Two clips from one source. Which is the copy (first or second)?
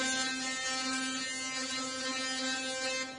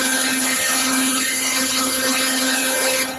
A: second